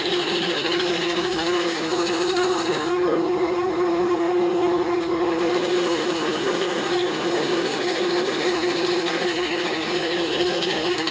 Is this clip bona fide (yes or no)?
no